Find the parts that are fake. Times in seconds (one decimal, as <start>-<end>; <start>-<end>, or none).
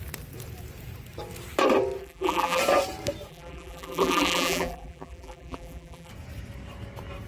2.0-2.6; 3.3-6.1